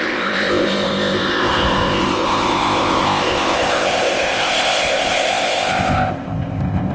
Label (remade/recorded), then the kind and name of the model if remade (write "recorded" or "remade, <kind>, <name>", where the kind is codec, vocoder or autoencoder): remade, codec, ZipCodec